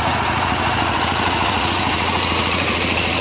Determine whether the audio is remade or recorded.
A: remade